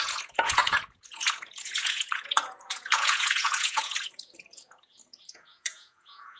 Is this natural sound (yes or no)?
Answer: no